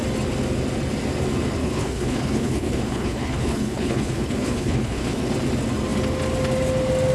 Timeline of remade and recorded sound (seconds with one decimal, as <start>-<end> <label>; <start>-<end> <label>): 0.0-1.6 recorded; 1.6-5.3 remade; 5.3-7.1 recorded

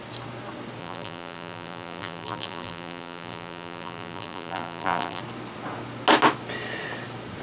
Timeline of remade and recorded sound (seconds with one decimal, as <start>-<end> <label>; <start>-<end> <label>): 0.0-0.8 recorded; 0.8-5.2 remade; 5.2-7.4 recorded